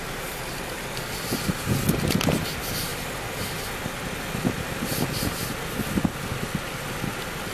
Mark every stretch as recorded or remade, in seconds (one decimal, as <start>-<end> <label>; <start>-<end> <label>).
0.0-7.5 recorded